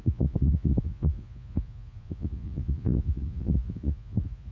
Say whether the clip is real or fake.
fake